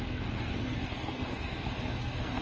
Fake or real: fake